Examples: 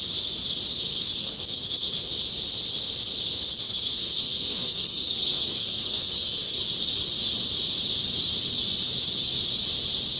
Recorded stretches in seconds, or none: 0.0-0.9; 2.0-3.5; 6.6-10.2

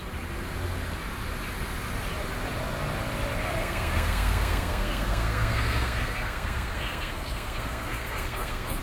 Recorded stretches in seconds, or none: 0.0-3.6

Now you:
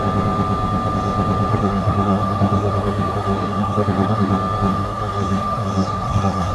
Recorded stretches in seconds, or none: 0.0-1.5; 4.3-4.7

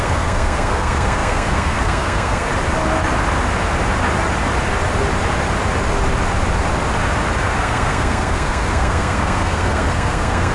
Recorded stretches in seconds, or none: 2.5-7.4

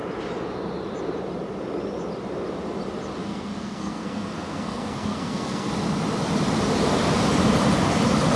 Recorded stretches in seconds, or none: 0.0-3.2; 5.7-8.4